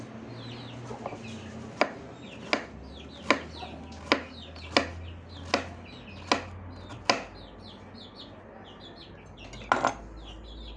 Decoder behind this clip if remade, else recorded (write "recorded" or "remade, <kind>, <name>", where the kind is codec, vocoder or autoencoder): recorded